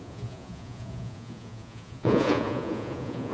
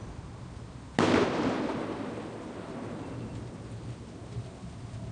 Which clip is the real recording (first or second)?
second